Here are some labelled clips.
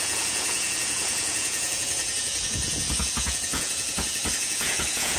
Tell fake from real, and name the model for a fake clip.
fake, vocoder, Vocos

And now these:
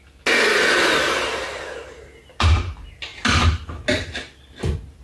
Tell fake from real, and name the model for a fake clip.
real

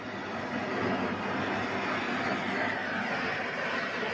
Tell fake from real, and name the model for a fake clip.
real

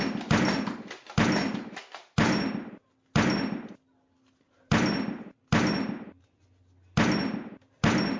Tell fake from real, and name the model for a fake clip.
real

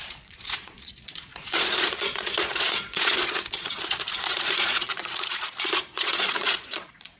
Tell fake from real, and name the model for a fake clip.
fake, vocoder, Vocos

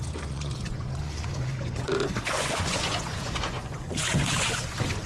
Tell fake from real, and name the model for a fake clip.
fake, vocoder, Vocos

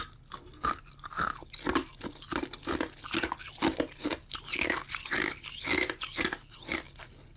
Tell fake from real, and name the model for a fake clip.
real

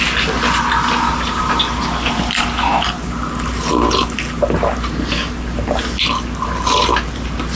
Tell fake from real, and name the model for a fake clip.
real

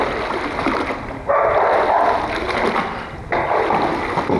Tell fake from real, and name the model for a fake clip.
real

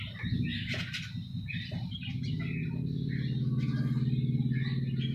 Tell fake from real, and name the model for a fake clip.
real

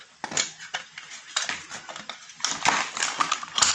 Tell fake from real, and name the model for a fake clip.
real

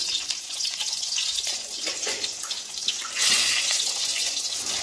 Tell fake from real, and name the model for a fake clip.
fake, vocoder, Vocos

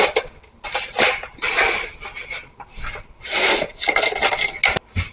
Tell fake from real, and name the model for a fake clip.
real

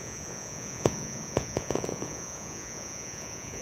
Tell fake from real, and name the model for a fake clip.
fake, vocoder, Vocos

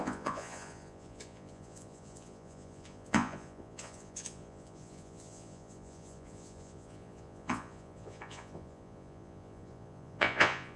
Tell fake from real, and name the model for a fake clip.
fake, vocoder, Vocos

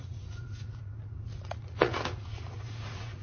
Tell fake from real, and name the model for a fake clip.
fake, vocoder, Vocos